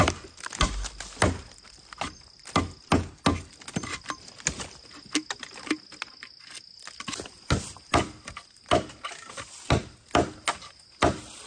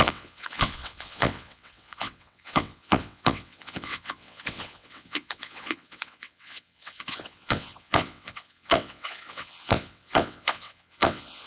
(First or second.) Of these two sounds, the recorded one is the first